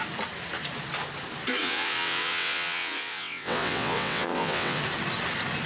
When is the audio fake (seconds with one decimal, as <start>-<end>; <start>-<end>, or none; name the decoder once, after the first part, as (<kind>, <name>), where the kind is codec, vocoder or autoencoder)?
1.6-4.8 (vocoder, WaveNeXt)